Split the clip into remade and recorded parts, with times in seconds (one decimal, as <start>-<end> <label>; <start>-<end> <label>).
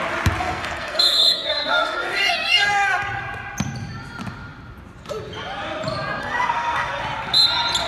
0.0-0.4 recorded; 0.4-3.2 remade; 3.2-6.2 recorded; 6.2-7.0 remade; 7.0-7.9 recorded